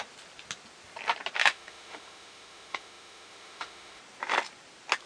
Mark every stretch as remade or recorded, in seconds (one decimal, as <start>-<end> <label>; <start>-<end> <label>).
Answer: 0.0-1.4 recorded; 1.4-4.0 remade; 4.0-5.1 recorded